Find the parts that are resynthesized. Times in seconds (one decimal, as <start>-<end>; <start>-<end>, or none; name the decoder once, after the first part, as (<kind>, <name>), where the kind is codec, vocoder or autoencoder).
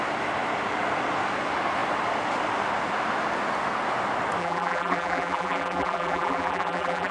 4.4-7.1 (vocoder, BigVGAN v2)